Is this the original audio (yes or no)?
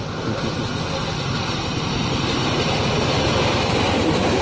yes